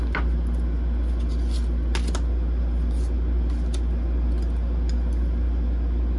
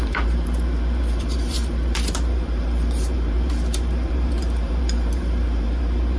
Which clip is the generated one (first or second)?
second